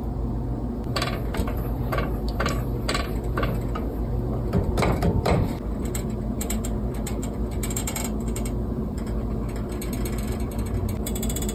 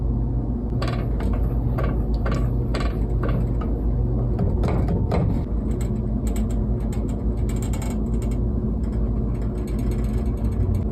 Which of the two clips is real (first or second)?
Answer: second